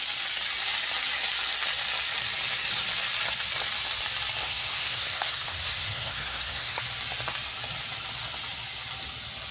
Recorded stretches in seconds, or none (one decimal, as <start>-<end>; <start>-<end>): 0.0-4.4; 6.8-9.5